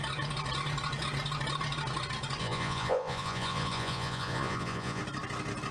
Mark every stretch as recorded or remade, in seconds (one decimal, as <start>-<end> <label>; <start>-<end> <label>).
0.0-2.4 recorded; 2.4-5.0 remade; 5.0-5.7 recorded